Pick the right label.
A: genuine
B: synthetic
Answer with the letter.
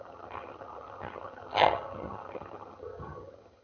B